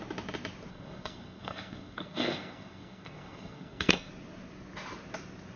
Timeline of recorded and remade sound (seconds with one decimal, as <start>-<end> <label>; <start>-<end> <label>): 0.0-0.7 recorded; 0.7-4.1 remade; 4.1-5.6 recorded